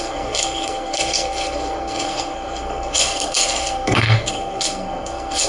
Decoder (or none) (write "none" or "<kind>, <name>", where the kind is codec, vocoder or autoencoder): codec, SNAC